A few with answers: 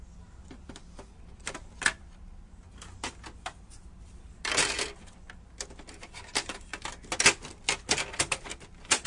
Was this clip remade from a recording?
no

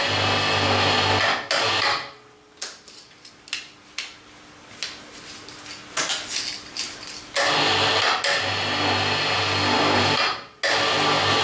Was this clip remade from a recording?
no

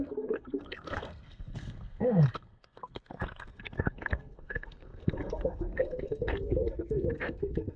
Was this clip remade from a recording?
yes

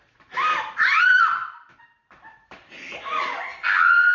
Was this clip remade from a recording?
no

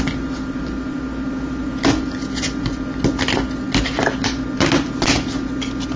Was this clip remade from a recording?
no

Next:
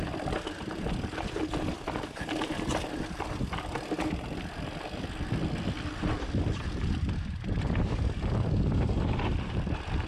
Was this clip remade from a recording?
yes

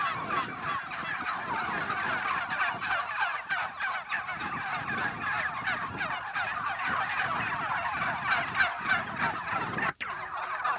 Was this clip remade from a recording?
yes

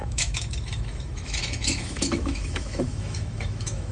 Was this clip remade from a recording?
yes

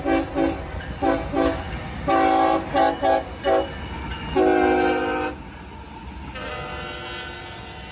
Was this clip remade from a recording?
no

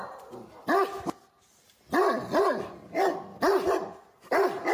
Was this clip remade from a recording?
no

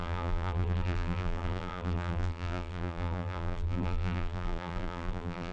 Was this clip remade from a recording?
yes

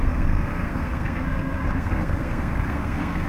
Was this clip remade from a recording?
yes